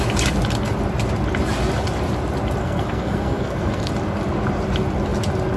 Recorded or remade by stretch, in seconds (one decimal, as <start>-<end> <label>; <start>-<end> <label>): 0.0-2.6 recorded; 2.6-3.9 remade; 3.9-5.6 recorded